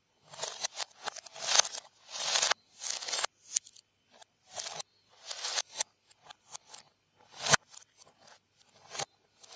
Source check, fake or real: real